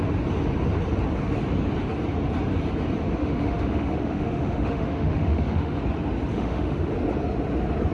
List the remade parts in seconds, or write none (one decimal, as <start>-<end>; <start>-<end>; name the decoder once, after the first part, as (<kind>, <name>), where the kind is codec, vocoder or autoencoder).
3.2-5.8 (autoencoder, DAC-VAE); 6.3-6.9